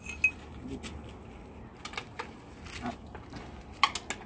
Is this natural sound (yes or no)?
yes